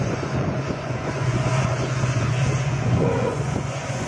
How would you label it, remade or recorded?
remade